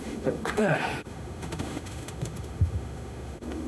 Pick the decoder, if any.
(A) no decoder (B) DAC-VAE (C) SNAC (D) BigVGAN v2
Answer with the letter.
B